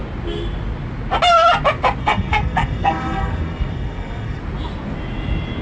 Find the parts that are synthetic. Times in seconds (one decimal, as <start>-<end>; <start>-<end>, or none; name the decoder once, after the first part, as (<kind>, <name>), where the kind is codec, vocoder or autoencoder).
2.0-4.4 (codec, SNAC)